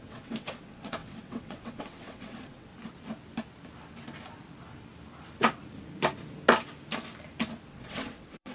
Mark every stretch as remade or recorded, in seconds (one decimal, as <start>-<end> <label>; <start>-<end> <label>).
0.0-2.7 remade; 2.7-7.7 recorded; 7.7-8.5 remade